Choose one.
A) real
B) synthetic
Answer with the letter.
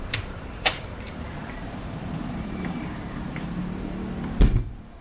B